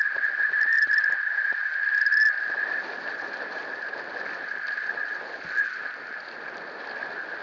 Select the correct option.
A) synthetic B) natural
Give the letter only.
B